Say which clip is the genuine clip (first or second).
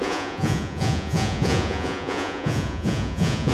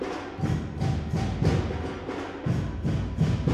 second